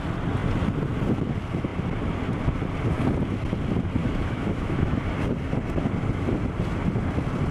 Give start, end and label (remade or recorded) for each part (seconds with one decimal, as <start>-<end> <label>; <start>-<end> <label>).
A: 0.0-4.0 recorded; 4.0-5.0 remade; 5.0-7.5 recorded